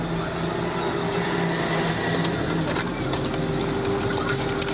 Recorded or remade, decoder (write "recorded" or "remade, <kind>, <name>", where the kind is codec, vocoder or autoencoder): recorded